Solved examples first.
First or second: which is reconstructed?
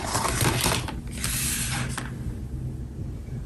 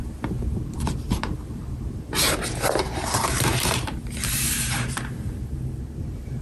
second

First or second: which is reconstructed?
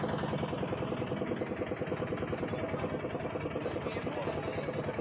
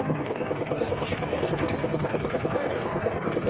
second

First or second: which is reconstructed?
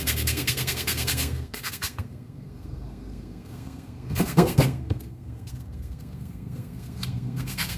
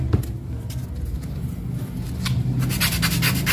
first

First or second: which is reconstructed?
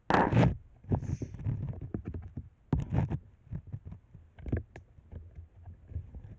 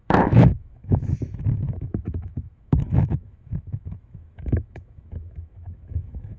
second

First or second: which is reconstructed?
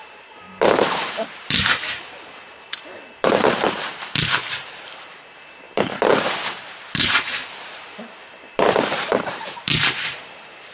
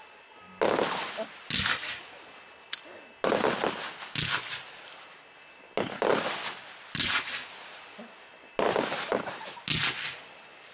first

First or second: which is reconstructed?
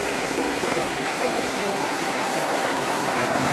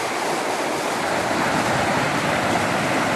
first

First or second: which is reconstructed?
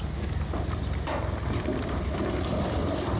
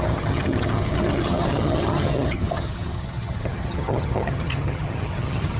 second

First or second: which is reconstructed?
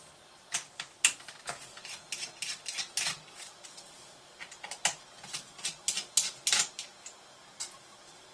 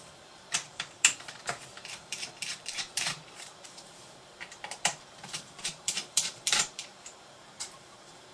second